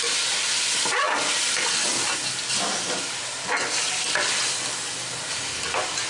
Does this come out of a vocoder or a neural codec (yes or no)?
no